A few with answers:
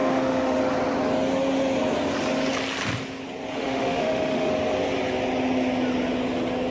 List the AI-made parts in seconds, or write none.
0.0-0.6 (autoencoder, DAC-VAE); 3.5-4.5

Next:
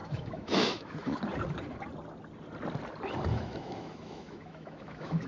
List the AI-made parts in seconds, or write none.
0.0-1.2 (autoencoder, DAC-VAE); 3.3-5.3

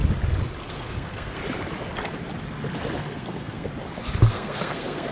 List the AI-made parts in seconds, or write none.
0.7-1.4 (codec, SNAC); 3.0-3.7; 4.3-5.1

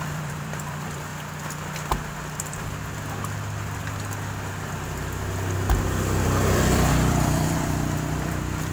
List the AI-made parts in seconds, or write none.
0.0-1.1 (vocoder, BigVGAN v2); 6.0-8.7

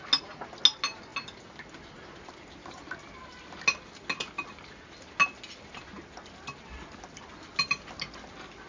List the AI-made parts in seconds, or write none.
none

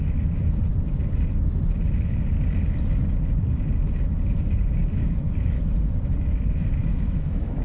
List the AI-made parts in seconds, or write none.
6.8-7.6 (autoencoder, DAC-VAE)

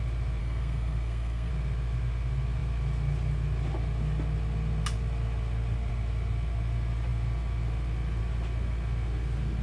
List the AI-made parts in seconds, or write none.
0.4-1.5 (codec, SNAC)

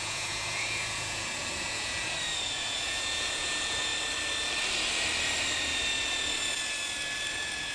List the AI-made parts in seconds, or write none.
0.0-3.9 (vocoder, Vocos); 7.3-7.7